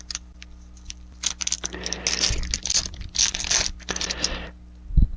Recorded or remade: recorded